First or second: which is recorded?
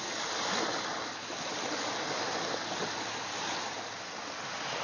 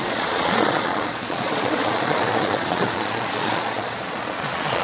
first